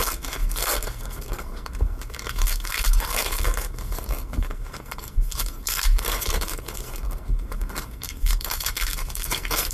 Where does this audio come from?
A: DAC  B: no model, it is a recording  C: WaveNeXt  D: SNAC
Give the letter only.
D